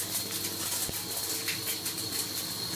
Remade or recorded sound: recorded